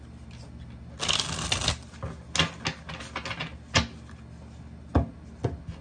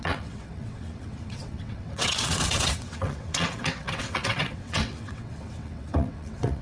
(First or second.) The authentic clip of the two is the first